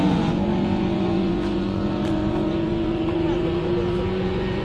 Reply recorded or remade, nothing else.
remade